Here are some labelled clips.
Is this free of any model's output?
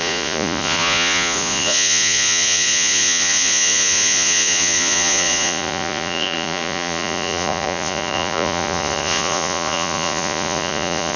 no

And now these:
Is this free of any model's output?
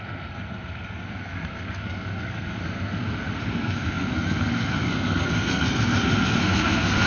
no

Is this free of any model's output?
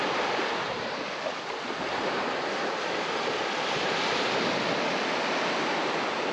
no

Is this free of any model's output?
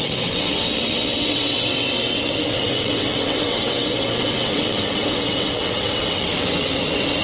no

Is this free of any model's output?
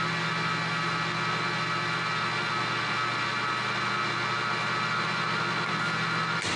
yes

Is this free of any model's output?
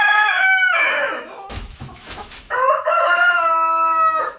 no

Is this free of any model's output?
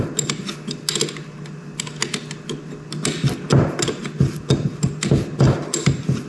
yes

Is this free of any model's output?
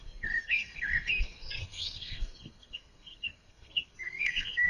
no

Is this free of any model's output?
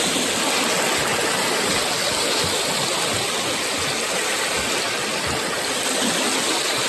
yes